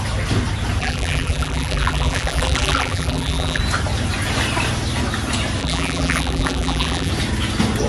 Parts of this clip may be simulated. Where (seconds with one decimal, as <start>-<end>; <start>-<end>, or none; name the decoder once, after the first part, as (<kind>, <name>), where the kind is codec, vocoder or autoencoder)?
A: 0.8-3.6 (vocoder, BigVGAN v2); 5.6-7.1